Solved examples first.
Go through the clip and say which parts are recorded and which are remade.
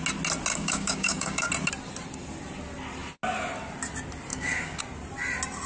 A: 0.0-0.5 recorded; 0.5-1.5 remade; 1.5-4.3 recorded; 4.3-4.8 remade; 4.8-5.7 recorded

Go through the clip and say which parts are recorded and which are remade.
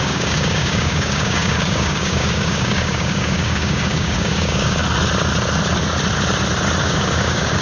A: 0.0-4.8 remade; 4.8-6.8 recorded; 6.8-7.6 remade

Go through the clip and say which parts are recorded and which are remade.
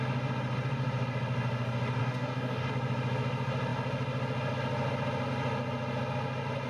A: 0.0-2.0 recorded; 2.0-2.7 remade; 2.7-6.7 recorded